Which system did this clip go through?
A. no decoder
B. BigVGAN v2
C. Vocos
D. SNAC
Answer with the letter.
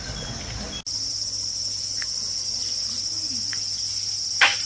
A